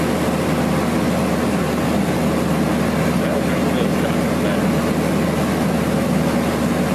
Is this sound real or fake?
real